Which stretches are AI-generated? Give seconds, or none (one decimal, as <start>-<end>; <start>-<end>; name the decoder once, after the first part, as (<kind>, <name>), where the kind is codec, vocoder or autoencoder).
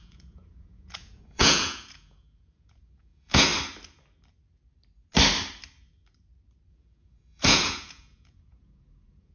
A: 0.0-3.5 (vocoder, Vocos); 6.7-9.3